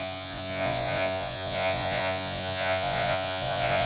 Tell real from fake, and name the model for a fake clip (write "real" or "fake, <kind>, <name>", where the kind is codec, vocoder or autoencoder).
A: fake, vocoder, Vocos